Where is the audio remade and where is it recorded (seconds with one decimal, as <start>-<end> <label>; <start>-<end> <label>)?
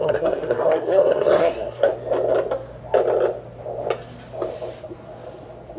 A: 0.0-1.9 remade; 1.9-5.8 recorded